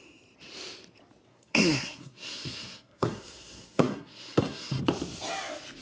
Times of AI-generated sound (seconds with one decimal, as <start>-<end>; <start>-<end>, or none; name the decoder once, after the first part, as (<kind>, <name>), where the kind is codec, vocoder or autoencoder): 1.3-4.8 (codec, SNAC)